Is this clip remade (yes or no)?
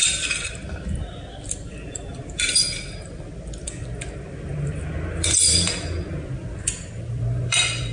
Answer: yes